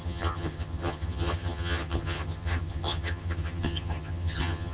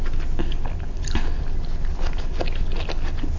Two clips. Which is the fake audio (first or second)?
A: first